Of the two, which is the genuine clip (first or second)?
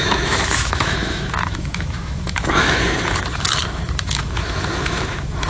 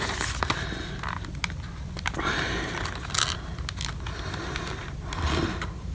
second